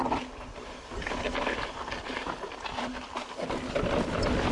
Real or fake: real